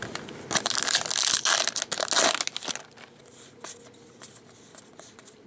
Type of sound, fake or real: real